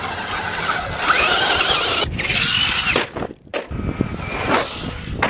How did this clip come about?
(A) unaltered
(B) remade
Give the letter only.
A